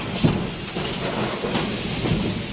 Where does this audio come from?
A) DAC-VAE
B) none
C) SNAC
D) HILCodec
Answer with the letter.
B